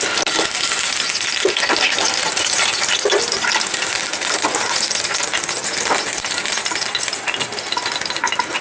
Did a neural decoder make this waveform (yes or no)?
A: no